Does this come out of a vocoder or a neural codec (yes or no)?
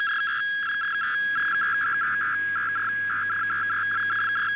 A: no